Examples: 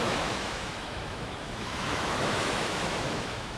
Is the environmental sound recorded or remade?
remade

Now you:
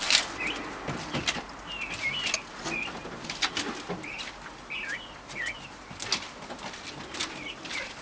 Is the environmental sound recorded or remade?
recorded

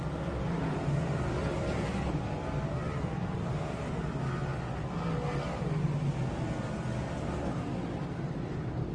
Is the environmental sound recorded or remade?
recorded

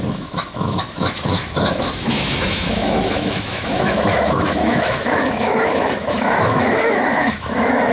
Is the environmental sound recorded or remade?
remade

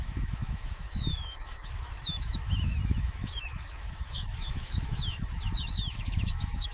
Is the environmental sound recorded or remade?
remade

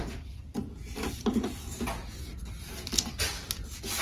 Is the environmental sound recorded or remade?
recorded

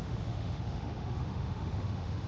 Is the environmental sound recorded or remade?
remade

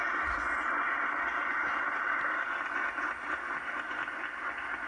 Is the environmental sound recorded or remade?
recorded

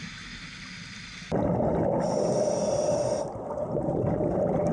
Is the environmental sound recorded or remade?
recorded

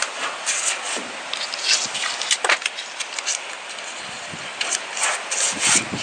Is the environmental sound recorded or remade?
recorded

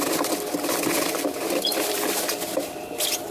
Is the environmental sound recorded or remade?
recorded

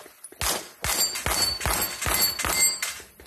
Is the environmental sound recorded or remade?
recorded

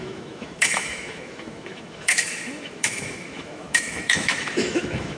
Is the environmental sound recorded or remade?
remade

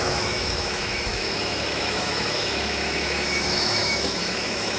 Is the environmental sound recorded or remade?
remade